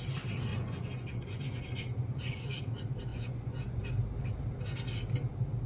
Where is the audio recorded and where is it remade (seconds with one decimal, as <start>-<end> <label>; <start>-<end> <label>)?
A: 0.0-0.5 recorded; 0.5-2.6 remade; 2.6-3.1 recorded; 3.1-3.8 remade; 3.8-5.7 recorded